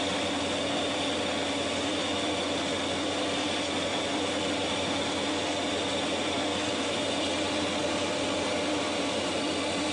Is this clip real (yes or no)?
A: yes